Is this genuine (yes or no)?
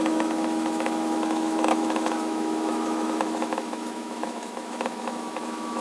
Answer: no